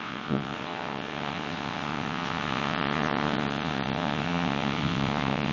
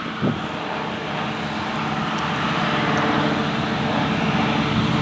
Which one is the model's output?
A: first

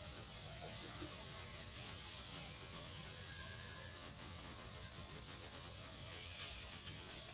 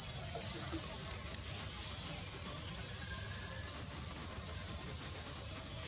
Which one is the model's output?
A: first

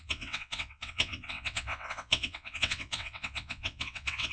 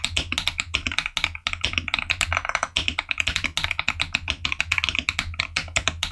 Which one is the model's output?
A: first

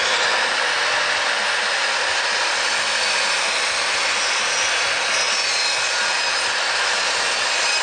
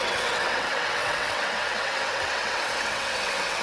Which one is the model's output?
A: second